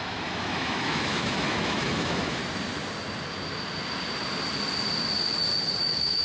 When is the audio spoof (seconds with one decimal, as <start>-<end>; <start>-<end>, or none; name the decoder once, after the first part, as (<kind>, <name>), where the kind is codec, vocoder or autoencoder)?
0.0-2.4 (autoencoder, DAC-VAE); 5.8-6.2